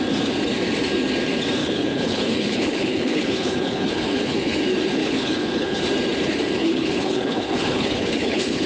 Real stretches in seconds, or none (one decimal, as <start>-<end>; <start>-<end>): 0.0-1.6; 4.6-5.0; 5.8-6.6